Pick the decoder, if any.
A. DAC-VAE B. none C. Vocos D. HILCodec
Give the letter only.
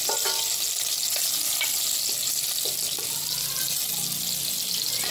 B